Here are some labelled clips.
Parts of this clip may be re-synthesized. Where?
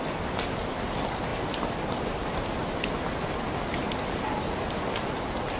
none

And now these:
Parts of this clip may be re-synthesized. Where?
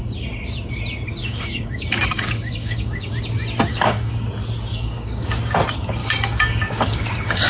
1.2-3.1 (codec, DAC); 3.7-4.3; 4.7-5.4; 6.0-7.5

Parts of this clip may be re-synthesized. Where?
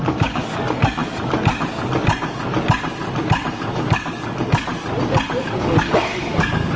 0.0-1.0 (codec, DAC); 3.6-4.7; 5.4-6.8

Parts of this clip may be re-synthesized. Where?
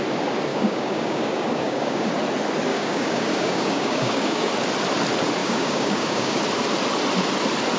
0.5-2.1 (codec, DAC); 2.7-4.5; 5.4-6.4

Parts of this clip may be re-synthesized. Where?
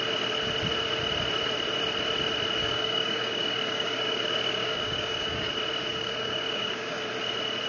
2.6-5.5 (codec, DAC); 5.9-7.0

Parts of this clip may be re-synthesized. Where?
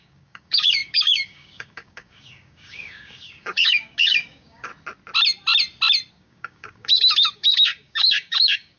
0.0-4.7 (codec, DAC); 6.1-8.8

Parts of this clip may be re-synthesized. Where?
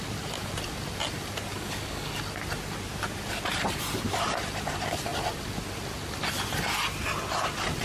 1.5-2.2 (codec, DAC)